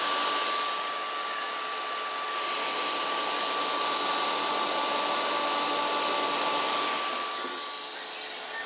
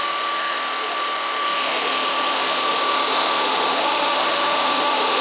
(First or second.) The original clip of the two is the first